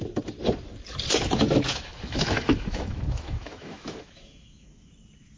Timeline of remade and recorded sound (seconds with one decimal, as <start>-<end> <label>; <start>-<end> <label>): 0.0-1.7 recorded; 1.7-4.9 remade; 4.9-5.4 recorded